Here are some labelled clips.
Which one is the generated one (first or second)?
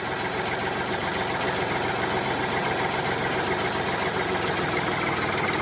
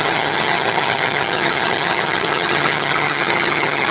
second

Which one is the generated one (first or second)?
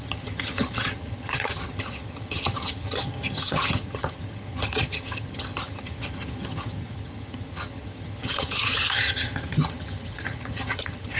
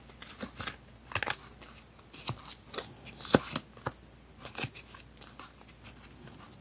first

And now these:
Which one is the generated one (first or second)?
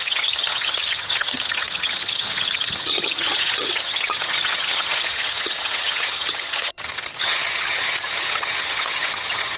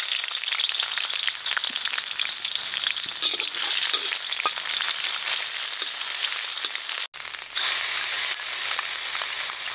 first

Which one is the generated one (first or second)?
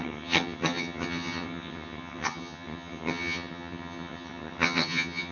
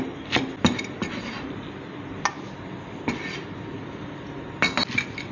first